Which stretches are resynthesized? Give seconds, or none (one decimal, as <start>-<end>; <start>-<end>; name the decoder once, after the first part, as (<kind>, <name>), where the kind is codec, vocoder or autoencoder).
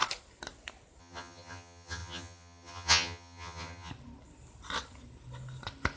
1.0-3.9 (vocoder, HiFi-GAN)